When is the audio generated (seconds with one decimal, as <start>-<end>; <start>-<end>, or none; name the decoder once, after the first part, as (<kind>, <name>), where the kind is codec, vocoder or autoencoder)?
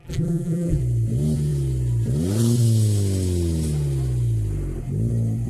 0.0-0.8 (vocoder, BigVGAN v2)